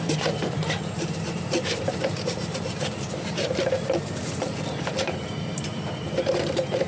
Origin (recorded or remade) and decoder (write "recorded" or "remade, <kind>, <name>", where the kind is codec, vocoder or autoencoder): remade, vocoder, BigVGAN v2